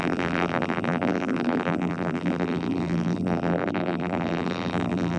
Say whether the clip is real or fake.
fake